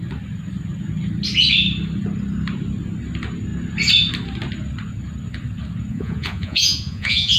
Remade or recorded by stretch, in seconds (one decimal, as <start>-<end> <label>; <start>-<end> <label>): 0.0-5.9 recorded; 5.9-7.4 remade